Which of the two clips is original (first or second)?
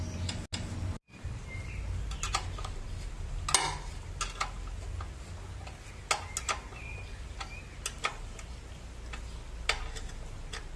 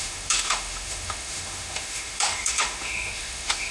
first